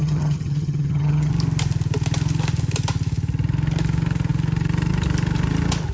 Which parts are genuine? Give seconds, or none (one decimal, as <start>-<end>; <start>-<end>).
1.3-5.9